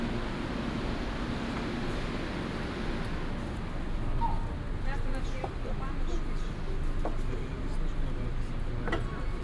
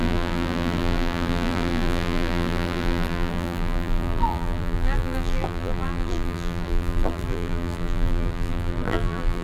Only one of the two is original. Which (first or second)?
first